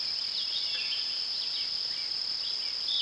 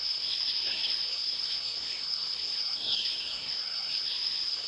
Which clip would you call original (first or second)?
first